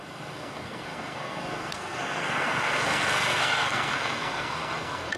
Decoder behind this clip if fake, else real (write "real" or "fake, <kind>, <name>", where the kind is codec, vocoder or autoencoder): fake, codec, SNAC